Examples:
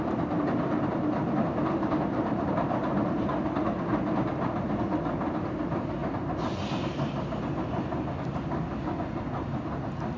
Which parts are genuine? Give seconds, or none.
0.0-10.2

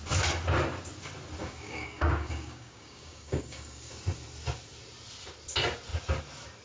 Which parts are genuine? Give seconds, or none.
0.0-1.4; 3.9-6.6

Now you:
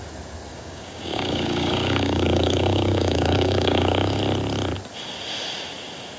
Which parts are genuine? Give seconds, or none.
0.0-0.5; 4.2-6.2